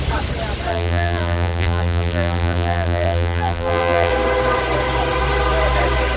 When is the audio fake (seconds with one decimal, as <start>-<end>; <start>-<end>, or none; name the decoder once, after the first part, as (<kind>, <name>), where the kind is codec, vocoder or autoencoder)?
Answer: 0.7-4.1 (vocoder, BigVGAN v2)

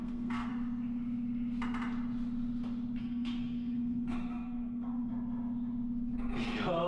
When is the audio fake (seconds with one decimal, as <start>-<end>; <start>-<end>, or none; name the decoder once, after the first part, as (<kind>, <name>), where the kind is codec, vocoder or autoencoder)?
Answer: 0.0-0.5 (codec, SNAC); 3.0-5.1

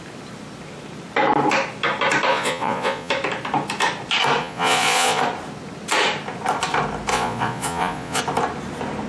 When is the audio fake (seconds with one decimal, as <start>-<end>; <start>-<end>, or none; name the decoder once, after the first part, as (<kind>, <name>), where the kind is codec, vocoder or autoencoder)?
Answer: 2.3-3.1 (vocoder, Vocos); 4.4-5.2; 7.1-8.2